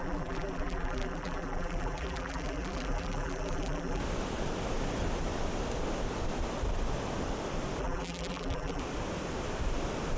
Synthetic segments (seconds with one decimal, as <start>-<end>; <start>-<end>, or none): 0.0-4.0; 7.8-8.8